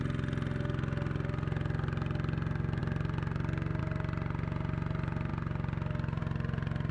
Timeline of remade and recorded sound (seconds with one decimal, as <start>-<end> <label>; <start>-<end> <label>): 0.0-6.9 recorded